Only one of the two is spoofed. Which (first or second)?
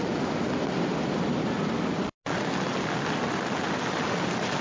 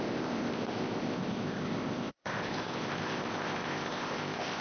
second